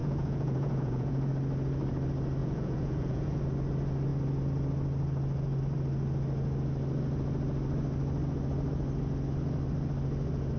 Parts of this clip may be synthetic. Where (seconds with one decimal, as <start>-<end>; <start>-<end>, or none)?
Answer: 0.0-1.3; 2.4-3.4